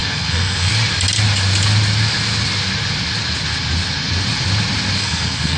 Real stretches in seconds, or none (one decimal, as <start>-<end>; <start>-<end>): 0.7-5.0

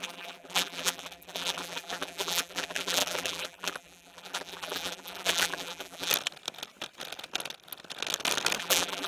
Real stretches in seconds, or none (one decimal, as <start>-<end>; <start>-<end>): 6.1-8.6

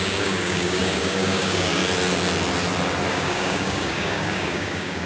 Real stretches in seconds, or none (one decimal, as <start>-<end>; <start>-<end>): 1.8-3.1

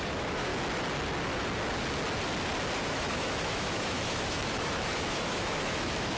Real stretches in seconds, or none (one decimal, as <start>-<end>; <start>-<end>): 0.5-2.8

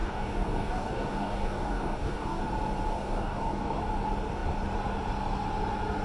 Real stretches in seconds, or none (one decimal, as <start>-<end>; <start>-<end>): 2.4-2.9; 3.8-6.0

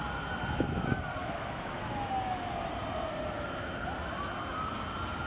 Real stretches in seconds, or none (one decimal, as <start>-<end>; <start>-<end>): 0.0-1.2; 2.1-5.3

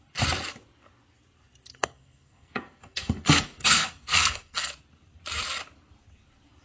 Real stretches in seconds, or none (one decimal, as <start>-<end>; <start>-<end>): 0.0-1.7; 4.7-6.6

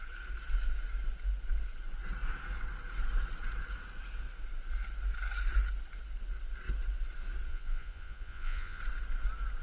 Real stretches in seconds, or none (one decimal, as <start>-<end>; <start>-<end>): 0.0-7.5; 8.8-9.6